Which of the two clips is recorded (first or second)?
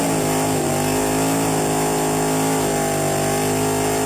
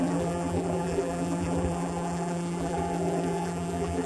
first